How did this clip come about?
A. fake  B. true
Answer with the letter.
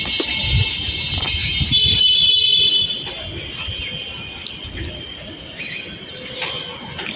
B